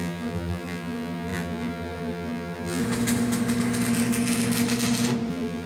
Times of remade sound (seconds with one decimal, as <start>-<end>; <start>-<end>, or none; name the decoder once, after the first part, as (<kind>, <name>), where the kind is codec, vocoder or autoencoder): 0.0-2.8 (vocoder, BigVGAN v2); 5.3-5.7

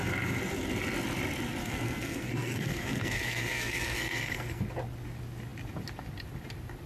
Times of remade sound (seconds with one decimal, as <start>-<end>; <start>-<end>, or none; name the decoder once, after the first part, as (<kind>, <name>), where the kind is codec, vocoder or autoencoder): 1.6-4.6 (codec, SNAC)

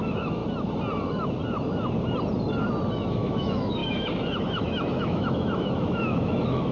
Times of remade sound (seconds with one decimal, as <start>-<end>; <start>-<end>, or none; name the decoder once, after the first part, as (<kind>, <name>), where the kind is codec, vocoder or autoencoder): 0.0-0.4 (autoencoder, DAC-VAE); 3.1-6.7

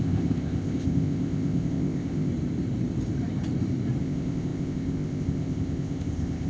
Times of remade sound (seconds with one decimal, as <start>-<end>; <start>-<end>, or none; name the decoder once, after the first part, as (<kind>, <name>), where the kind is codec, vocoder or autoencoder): 0.0-2.3 (codec, ZipCodec); 4.0-6.5

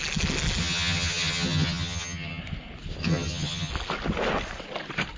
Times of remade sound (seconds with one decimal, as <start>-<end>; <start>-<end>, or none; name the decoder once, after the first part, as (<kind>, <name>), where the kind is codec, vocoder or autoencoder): 0.6-2.4 (vocoder, HiFi-GAN); 3.0-3.7

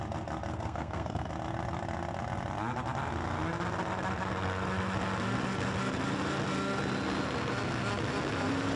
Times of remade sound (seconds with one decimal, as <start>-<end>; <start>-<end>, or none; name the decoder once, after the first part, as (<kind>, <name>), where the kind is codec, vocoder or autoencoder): 0.5-1.3 (codec, SNAC)

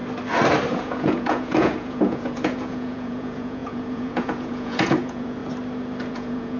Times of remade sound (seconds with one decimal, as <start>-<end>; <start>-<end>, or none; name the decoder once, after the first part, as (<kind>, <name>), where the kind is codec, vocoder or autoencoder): 0.7-5.4 (vocoder, Vocos); 6.1-6.6

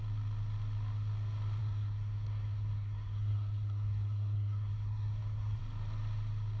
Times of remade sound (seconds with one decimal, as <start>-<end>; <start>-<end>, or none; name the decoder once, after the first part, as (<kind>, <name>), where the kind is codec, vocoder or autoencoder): 1.6-5.6 (codec, SNAC)